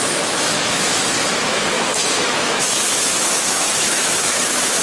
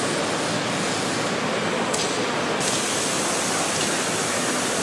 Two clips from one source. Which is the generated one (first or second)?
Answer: first